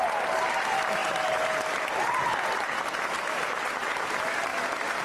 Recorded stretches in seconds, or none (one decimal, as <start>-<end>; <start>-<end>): 0.0-5.0